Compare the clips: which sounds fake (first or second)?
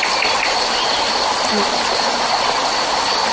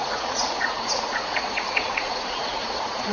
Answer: second